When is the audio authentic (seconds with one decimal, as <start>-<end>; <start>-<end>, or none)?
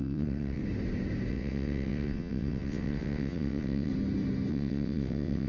0.6-1.3; 3.9-4.5